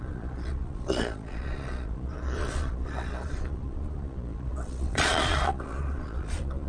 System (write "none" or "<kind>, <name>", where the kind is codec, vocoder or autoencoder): vocoder, Vocos